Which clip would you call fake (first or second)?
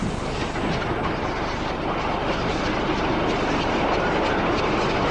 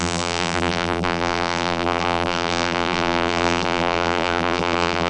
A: second